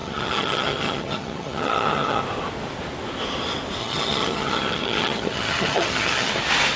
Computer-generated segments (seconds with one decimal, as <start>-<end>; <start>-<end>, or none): 0.0-2.2; 3.8-6.3